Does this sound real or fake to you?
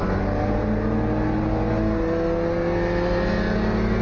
real